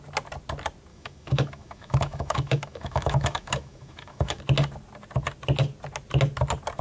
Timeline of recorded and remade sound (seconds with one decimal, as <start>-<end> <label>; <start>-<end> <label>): 0.0-0.9 recorded; 0.9-4.4 remade; 4.4-6.8 recorded